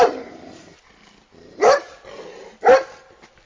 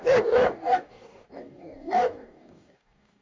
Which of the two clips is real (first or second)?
first